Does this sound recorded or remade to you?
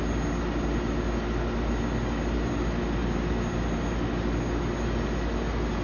recorded